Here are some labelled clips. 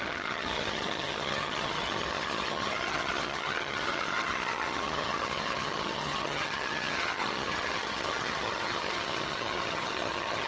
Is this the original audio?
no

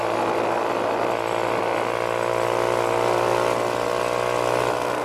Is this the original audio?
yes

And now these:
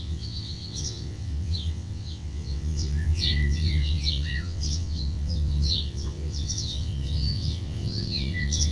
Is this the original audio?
no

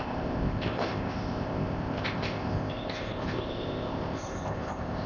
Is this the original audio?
no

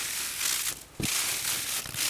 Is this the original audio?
yes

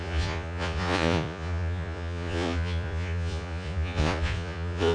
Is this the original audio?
no